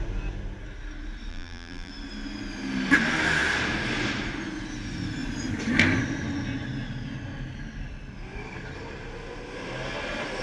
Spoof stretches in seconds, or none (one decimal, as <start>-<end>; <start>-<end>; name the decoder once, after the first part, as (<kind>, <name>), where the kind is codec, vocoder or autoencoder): 1.3-1.9 (vocoder, BigVGAN v2)